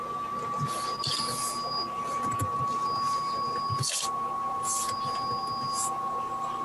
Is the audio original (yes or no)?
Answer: yes